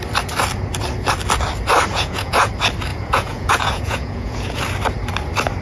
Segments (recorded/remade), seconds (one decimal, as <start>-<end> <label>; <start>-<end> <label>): 0.0-1.9 recorded; 1.9-2.5 remade; 2.5-2.9 recorded; 2.9-4.6 remade; 4.6-5.6 recorded